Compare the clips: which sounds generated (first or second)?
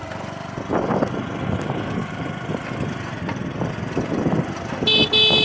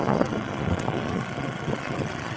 second